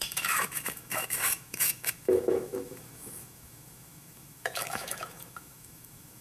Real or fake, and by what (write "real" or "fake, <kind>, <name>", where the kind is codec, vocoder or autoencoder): fake, autoencoder, DAC-VAE